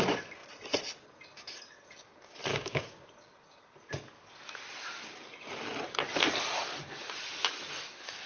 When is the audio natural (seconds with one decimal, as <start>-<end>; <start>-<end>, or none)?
0.0-2.5; 3.1-8.3